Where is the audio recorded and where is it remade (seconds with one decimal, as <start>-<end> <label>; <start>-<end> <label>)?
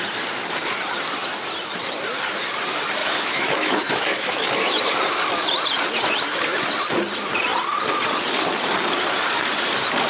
0.0-3.0 recorded; 3.0-4.8 remade; 4.8-10.1 recorded